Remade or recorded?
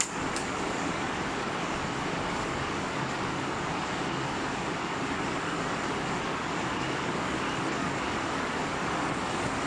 remade